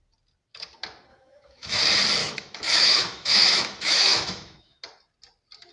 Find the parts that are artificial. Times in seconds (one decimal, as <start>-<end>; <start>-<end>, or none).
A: 1.1-1.8; 2.2-4.8